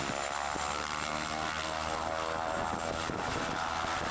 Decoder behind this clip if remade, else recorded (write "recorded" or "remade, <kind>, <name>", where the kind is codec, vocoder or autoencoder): recorded